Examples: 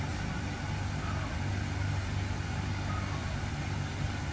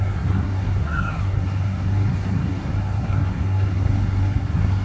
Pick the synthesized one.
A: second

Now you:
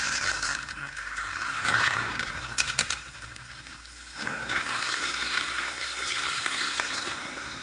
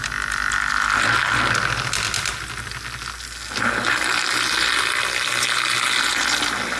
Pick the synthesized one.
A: first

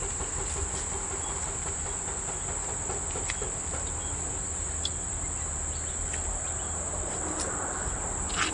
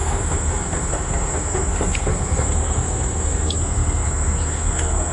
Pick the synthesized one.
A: second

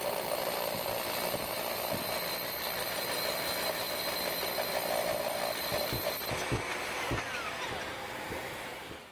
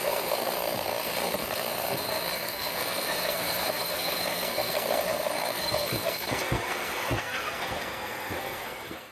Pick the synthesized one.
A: second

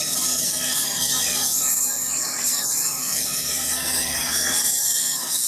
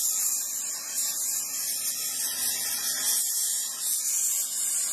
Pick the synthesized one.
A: first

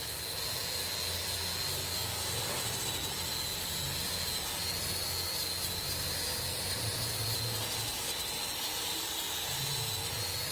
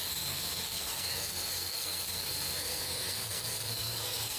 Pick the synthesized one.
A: second